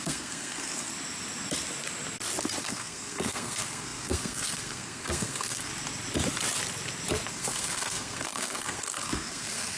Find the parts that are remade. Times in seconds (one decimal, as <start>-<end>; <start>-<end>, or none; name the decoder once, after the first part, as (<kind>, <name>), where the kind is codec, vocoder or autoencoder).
0.0-0.9 (codec, SNAC); 2.6-5.7; 7.3-9.8